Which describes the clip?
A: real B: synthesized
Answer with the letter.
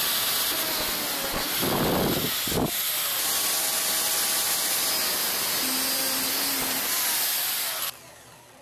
A